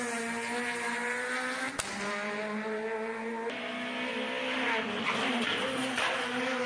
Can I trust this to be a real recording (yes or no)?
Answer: yes